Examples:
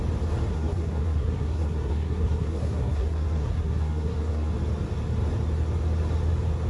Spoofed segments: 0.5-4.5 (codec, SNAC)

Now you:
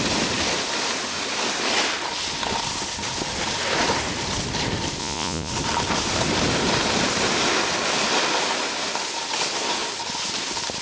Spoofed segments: 5.0-5.5 (vocoder, Vocos)

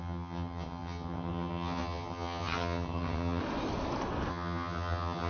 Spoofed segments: 0.0-3.4 (vocoder, HiFi-GAN); 4.3-5.3

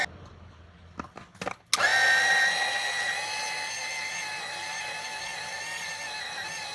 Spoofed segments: 5.3-5.9 (vocoder, BigVGAN v2)